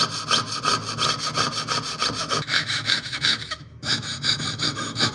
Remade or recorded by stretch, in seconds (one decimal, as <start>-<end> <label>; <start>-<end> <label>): 0.0-2.2 recorded; 2.2-5.1 remade